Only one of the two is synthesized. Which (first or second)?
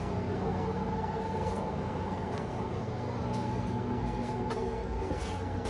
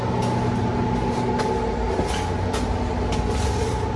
first